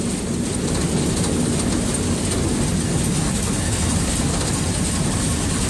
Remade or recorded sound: recorded